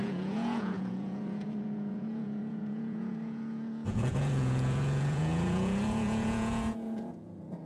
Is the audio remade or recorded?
remade